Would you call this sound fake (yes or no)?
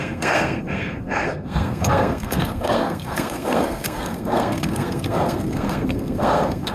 yes